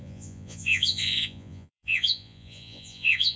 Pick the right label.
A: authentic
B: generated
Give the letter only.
B